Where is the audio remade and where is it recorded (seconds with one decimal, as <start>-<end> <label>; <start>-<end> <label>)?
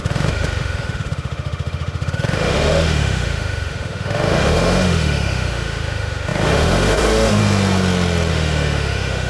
0.0-7.4 remade; 7.4-8.3 recorded; 8.3-9.3 remade